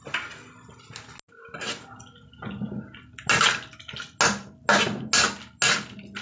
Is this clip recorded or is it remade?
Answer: recorded